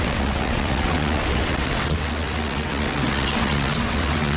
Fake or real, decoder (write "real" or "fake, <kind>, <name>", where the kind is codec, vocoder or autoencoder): fake, vocoder, WaveNeXt